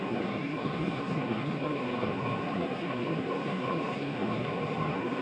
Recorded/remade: remade